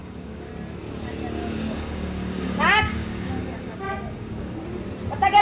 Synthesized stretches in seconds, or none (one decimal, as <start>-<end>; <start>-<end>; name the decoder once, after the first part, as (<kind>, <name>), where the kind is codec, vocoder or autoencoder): 0.0-0.5 (codec, DAC); 1.4-4.6